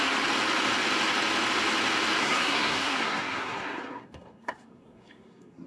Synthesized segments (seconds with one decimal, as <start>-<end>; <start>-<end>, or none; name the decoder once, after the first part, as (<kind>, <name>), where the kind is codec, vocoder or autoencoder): 2.2-5.7 (codec, SNAC)

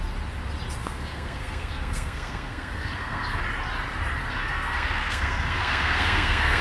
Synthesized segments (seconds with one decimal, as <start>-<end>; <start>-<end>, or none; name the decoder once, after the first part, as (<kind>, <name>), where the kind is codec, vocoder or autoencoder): 0.8-3.4 (codec, SNAC); 4.2-6.6